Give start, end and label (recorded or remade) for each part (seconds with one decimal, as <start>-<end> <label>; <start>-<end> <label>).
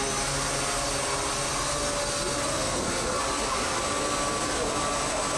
0.0-2.5 recorded; 2.5-3.2 remade; 3.2-5.4 recorded